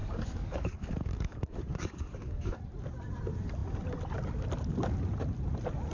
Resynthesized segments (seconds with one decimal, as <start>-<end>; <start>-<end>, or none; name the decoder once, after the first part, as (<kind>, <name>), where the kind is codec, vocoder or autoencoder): 0.0-2.6 (codec, DAC)